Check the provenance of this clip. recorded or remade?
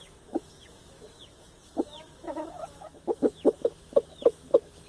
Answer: remade